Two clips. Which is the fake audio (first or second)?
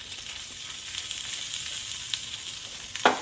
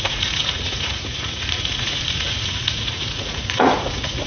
second